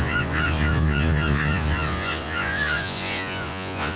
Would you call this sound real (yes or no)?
no